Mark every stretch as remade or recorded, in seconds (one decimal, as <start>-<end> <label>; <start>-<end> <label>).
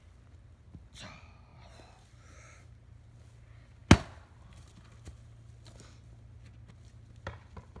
0.0-7.8 recorded